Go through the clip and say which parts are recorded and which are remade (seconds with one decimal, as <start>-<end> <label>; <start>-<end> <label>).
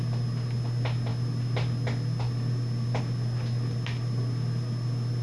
0.0-5.2 recorded